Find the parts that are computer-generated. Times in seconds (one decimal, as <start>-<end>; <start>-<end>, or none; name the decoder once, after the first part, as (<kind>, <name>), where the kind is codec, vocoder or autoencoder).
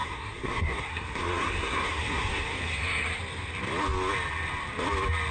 0.0-3.2 (codec, SNAC)